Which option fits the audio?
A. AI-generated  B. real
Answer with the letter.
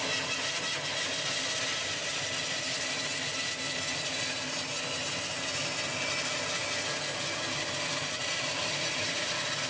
B